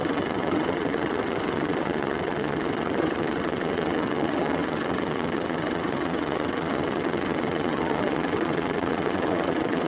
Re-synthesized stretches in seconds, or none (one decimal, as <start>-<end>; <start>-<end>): 0.0-9.9